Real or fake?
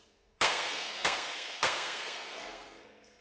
fake